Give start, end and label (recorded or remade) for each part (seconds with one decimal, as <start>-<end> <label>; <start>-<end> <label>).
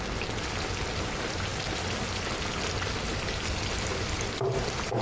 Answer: 0.0-5.0 recorded